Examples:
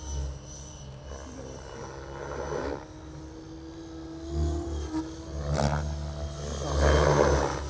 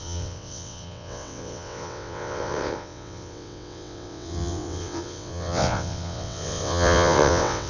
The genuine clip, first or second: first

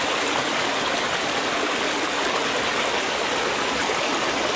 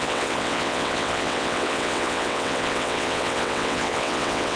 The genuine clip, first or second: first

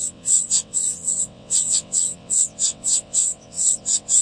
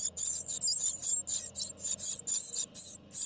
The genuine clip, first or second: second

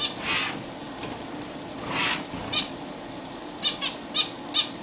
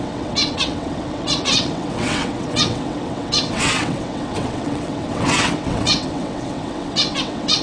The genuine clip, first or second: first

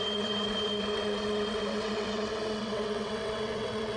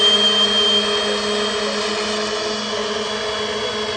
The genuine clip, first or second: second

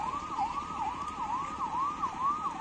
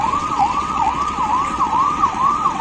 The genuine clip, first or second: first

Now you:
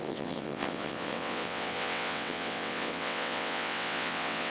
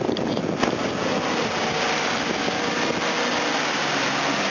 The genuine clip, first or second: second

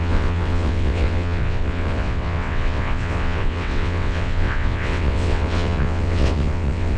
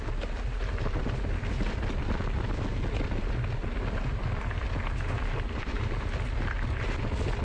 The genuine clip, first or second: second